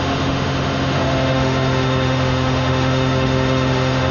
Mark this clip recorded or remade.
remade